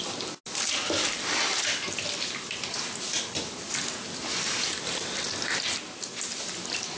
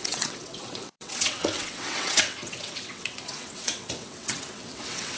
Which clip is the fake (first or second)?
second